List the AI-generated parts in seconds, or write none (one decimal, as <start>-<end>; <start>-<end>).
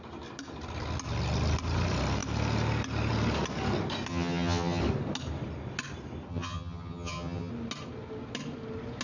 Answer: 4.1-4.8; 6.3-7.5